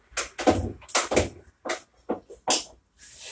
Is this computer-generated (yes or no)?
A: no